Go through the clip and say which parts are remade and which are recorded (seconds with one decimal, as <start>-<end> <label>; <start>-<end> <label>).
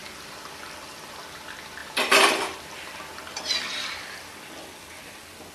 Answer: 0.0-1.2 remade; 1.2-1.8 recorded; 1.8-3.4 remade; 3.4-5.5 recorded